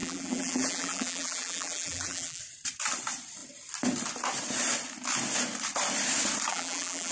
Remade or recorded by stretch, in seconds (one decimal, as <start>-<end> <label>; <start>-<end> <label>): 0.0-2.4 remade; 2.4-6.5 recorded; 6.5-7.1 remade